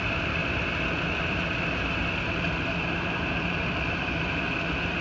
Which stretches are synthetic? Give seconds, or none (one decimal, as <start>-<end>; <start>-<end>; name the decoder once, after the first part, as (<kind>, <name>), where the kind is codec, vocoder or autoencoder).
0.0-0.4 (vocoder, BigVGAN v2); 1.2-2.0; 3.0-5.0